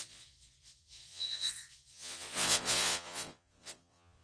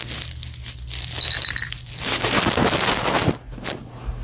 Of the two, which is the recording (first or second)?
second